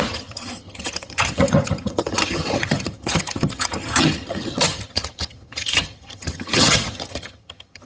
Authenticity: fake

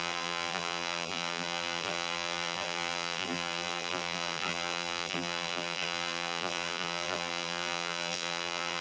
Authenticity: fake